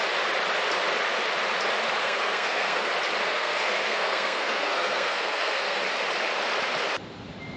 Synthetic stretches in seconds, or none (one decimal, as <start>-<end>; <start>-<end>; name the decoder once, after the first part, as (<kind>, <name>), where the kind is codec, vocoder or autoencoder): 2.0-2.9 (codec, SNAC); 3.3-5.8